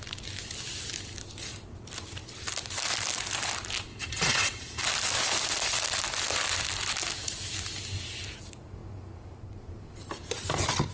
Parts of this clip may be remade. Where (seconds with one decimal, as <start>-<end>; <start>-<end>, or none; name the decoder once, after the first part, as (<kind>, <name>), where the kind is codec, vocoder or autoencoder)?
3.9-4.8 (vocoder, WaveNeXt)